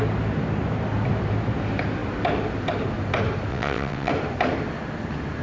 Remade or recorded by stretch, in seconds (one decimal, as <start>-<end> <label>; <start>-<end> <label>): 0.0-3.5 recorded; 3.5-4.1 remade; 4.1-5.4 recorded